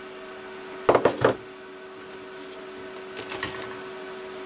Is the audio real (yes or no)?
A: yes